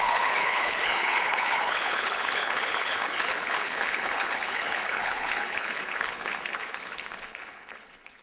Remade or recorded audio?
remade